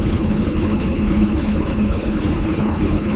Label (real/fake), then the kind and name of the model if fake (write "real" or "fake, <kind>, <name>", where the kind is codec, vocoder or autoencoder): fake, codec, HILCodec